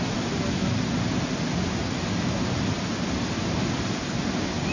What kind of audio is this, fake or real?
real